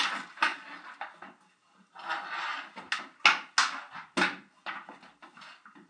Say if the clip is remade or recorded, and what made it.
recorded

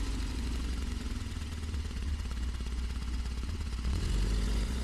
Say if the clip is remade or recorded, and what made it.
remade, vocoder, Vocos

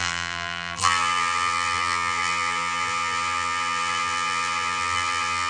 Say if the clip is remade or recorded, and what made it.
remade, vocoder, BigVGAN v2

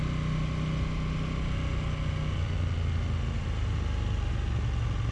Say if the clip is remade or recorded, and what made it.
recorded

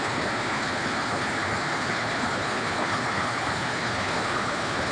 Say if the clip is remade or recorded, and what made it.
remade, codec, HILCodec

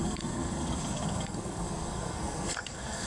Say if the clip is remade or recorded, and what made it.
remade, codec, SNAC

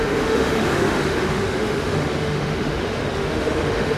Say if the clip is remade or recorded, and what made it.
remade, autoencoder, DAC-VAE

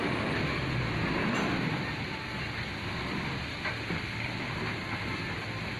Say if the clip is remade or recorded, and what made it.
recorded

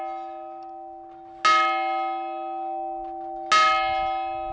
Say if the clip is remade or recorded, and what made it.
recorded